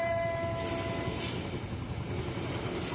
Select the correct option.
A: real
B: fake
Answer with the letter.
A